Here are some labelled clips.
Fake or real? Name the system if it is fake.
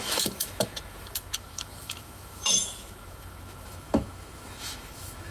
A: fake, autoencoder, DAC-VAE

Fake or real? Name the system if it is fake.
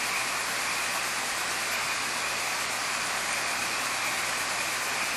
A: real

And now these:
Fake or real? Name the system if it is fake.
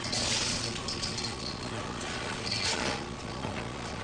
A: fake, vocoder, Vocos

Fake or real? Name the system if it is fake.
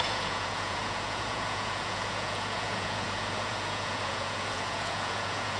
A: fake, vocoder, Vocos